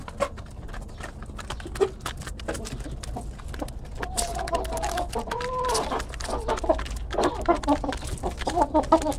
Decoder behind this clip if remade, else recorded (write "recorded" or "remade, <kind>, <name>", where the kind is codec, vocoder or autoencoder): recorded